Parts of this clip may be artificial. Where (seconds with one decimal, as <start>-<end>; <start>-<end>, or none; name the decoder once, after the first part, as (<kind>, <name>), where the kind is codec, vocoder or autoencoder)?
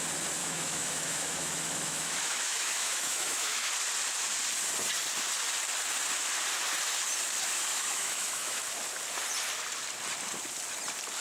0.4-3.7 (autoencoder, DAC-VAE); 7.7-8.6